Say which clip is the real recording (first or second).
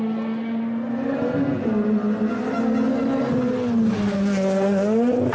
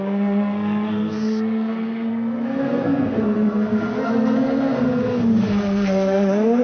first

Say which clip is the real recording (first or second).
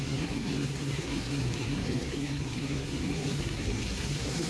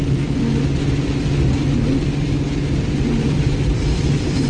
second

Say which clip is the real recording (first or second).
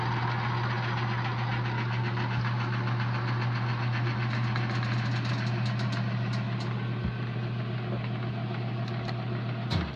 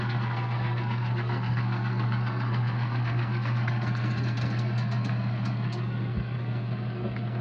first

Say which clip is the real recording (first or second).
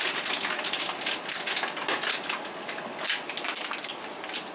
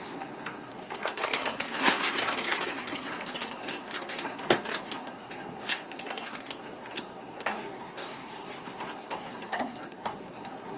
first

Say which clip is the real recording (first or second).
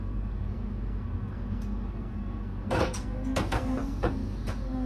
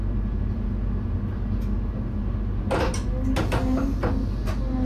second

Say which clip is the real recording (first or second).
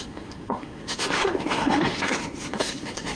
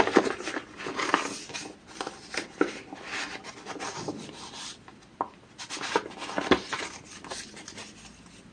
second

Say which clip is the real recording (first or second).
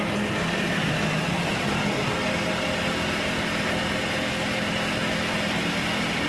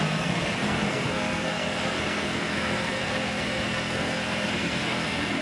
first